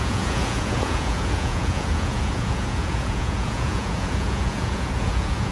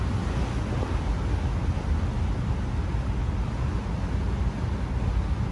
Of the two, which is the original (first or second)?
second